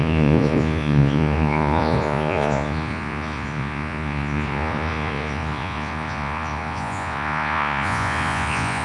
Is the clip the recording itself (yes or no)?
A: no